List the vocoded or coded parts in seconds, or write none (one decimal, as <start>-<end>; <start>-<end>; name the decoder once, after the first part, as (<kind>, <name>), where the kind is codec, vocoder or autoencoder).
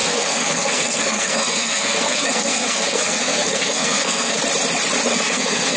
0.0-4.4 (codec, SNAC); 5.1-5.8